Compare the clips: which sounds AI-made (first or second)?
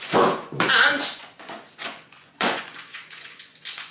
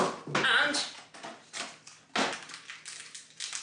first